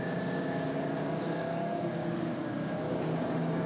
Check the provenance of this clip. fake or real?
fake